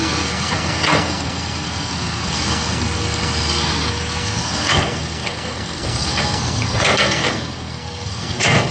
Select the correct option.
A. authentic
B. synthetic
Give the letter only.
B